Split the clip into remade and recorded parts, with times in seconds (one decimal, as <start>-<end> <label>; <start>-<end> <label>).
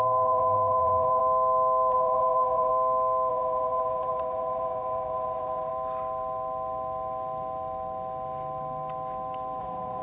0.0-1.2 remade; 1.2-1.9 recorded; 1.9-2.7 remade; 2.7-3.3 recorded; 3.3-5.7 remade; 5.7-9.6 recorded; 9.6-10.0 remade